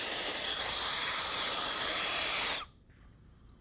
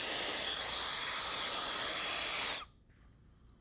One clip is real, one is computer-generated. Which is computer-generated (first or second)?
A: first